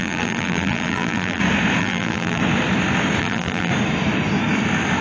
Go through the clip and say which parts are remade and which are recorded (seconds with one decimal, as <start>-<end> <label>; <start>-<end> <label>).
0.0-1.4 remade; 1.4-1.8 recorded; 1.8-2.4 remade; 2.4-3.2 recorded; 3.2-3.7 remade; 3.7-5.0 recorded